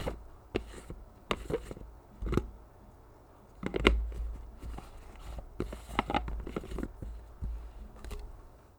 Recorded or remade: recorded